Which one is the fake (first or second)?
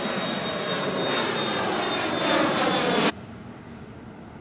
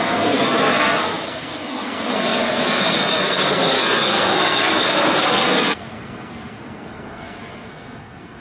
second